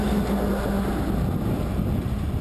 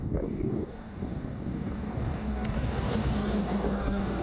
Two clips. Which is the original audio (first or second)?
first